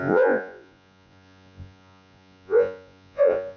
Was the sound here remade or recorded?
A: remade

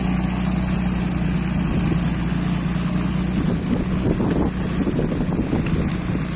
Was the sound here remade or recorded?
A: recorded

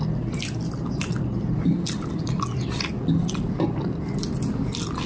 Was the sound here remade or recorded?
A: recorded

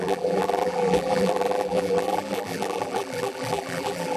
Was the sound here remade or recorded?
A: remade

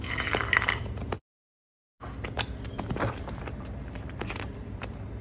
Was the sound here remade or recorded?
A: remade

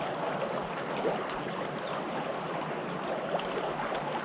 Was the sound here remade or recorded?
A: recorded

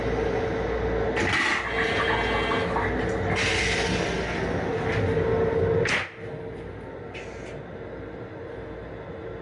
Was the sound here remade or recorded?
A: recorded